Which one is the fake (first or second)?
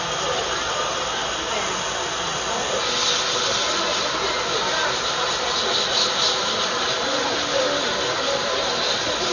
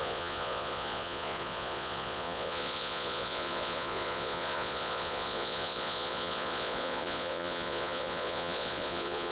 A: second